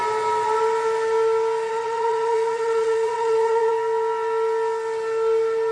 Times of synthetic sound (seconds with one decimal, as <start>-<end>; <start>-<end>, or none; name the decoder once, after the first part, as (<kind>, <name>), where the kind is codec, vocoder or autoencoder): 1.7-3.7 (vocoder, WaveNeXt)